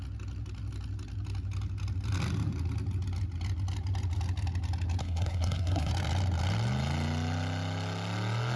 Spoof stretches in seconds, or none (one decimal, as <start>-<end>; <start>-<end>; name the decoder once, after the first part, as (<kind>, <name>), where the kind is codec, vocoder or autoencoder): 5.0-5.9 (codec, SNAC)